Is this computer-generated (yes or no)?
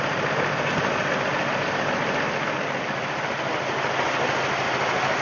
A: no